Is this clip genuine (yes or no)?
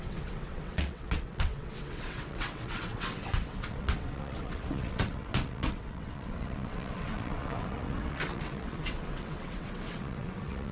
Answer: no